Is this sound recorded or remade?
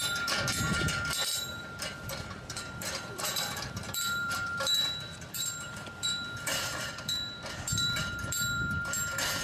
remade